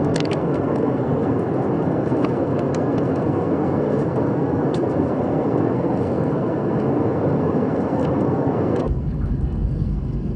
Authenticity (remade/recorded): remade